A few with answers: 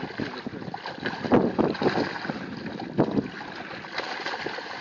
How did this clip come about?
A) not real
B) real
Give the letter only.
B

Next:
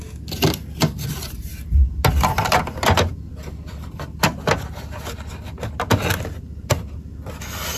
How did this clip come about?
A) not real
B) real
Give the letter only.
B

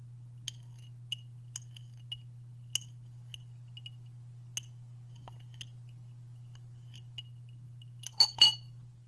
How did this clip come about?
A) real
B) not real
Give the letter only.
A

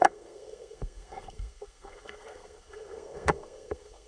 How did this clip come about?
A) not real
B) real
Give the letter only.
A